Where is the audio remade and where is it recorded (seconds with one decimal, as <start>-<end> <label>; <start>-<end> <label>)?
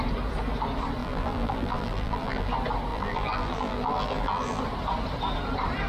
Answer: 0.0-1.0 recorded; 1.0-2.5 remade; 2.5-2.9 recorded; 2.9-4.6 remade; 4.6-5.9 recorded